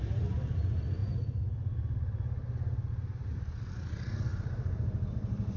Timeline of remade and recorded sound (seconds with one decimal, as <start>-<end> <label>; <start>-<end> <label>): 0.0-5.6 recorded